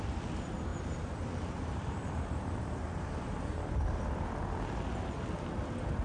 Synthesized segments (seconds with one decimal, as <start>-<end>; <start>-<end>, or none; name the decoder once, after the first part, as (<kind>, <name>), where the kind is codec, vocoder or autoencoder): 0.7-4.3 (vocoder, BigVGAN v2)